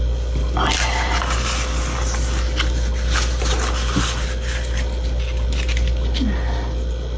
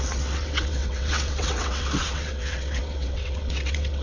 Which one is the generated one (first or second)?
second